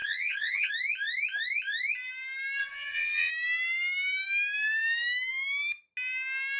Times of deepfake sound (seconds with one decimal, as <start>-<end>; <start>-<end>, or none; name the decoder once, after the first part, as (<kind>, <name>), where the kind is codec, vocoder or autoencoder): 0.0-0.7 (vocoder, HiFi-GAN); 2.6-3.3